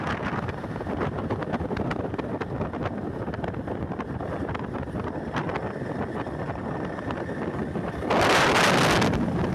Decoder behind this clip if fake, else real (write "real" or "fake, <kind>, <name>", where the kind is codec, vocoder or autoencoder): real